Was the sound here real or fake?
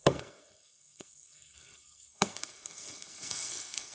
fake